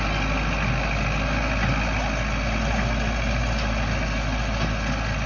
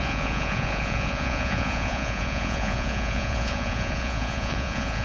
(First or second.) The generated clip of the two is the second